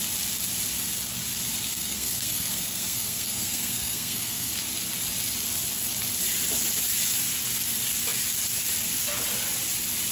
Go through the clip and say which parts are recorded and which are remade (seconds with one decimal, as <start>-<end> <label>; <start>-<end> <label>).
0.0-1.7 recorded; 1.7-4.5 remade; 4.5-10.1 recorded